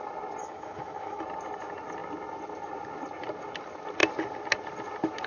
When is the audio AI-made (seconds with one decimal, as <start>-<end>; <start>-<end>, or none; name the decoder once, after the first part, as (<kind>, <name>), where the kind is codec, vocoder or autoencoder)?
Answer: 0.4-1.2 (autoencoder, DAC-VAE)